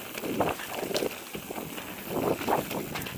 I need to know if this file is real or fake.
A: real